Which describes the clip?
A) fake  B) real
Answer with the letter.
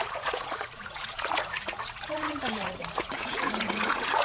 A